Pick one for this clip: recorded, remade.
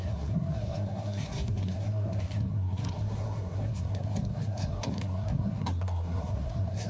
remade